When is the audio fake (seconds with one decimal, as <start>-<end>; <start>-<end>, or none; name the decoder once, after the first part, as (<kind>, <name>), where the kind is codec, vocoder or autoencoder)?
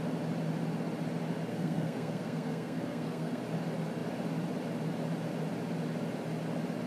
1.5-3.4 (codec, SNAC)